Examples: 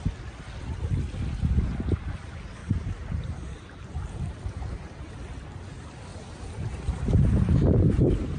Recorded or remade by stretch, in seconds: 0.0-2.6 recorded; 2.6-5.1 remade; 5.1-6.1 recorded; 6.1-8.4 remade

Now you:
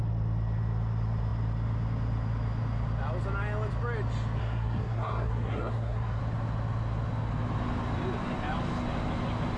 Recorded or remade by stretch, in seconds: 0.0-4.4 recorded; 4.4-6.2 remade; 6.2-9.6 recorded

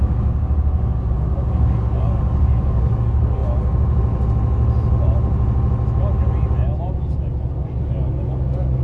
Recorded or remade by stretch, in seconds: 0.0-3.4 remade; 3.4-7.5 recorded; 7.5-8.8 remade

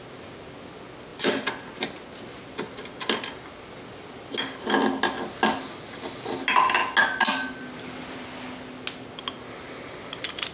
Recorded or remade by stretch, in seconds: 0.0-10.5 recorded

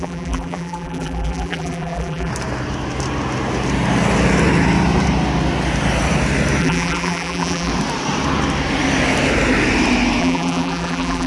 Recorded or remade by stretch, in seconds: 0.0-2.3 remade; 2.3-6.6 recorded; 6.6-7.7 remade; 7.7-10.2 recorded; 10.2-11.3 remade

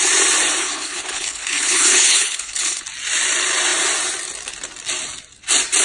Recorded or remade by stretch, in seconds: 0.0-0.6 recorded; 0.6-2.8 remade; 2.8-5.8 recorded